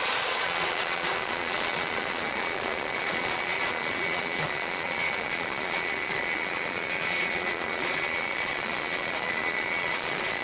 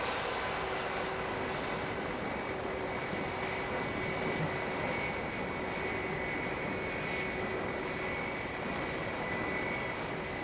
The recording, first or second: second